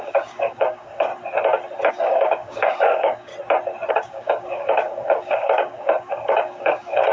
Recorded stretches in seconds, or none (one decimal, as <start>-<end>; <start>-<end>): 1.1-1.9; 3.3-3.9